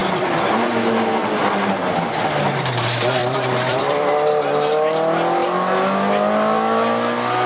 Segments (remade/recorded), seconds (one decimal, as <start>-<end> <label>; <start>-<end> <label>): 0.0-0.5 remade; 0.5-1.2 recorded; 1.2-1.7 remade; 1.7-3.2 recorded; 3.2-4.1 remade; 4.1-7.5 recorded